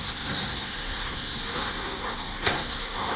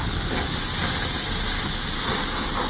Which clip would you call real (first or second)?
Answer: second